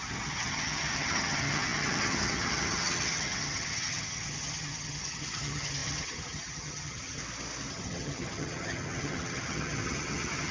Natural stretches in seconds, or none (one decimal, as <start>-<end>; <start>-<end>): 7.2-7.7